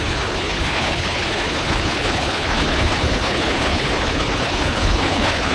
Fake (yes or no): yes